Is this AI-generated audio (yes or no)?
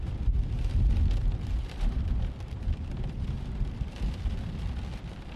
yes